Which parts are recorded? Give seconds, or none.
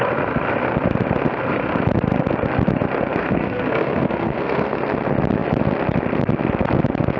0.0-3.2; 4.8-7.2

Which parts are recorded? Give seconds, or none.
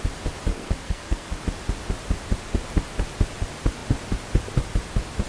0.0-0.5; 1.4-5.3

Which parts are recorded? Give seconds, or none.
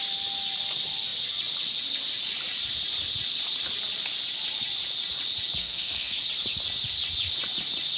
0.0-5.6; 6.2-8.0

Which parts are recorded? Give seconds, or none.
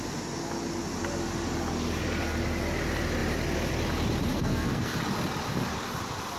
0.0-4.3; 5.0-6.4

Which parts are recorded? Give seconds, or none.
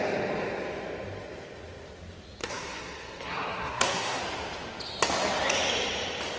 0.0-2.4; 4.2-6.4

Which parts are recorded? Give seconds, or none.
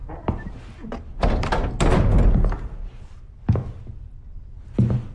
0.0-5.1